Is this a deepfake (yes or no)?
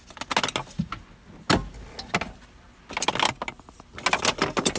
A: no